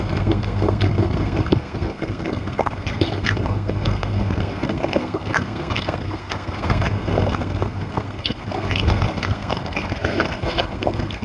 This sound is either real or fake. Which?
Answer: fake